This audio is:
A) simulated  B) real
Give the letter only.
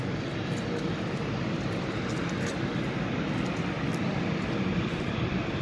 B